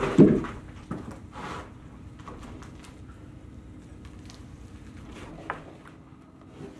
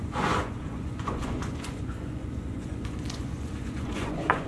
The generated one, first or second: second